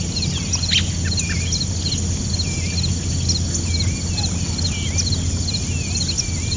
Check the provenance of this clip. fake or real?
real